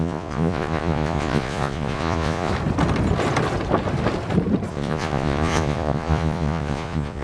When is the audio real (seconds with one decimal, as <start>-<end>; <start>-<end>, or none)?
2.5-4.7